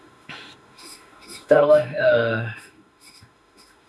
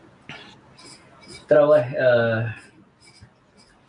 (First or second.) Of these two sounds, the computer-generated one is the first